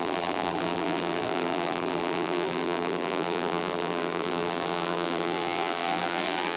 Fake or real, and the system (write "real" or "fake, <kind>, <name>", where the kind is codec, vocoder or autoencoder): fake, vocoder, BigVGAN v2